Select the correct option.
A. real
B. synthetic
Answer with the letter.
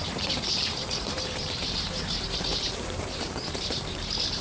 B